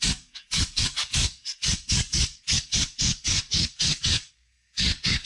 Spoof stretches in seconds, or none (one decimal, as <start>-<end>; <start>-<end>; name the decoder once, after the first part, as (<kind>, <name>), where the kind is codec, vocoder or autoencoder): 0.0-5.3 (codec, DAC)